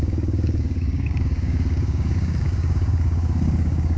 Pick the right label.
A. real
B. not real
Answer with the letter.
B